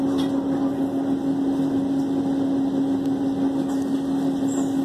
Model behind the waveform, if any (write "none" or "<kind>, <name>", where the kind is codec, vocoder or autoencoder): none